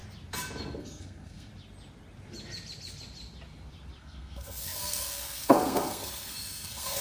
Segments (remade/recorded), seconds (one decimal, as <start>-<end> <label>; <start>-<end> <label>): 0.0-0.8 recorded; 0.8-1.5 remade; 1.5-4.0 recorded; 4.0-7.0 remade